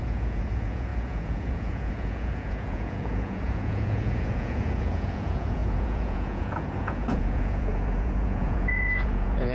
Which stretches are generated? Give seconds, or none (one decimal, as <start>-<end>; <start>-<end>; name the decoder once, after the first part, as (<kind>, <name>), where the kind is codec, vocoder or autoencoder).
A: 0.0-9.5 (vocoder, Vocos)